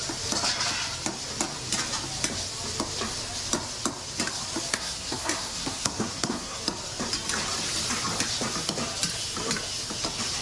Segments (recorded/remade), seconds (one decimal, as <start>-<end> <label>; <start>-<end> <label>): 0.0-4.7 recorded; 4.7-6.6 remade; 6.6-10.4 recorded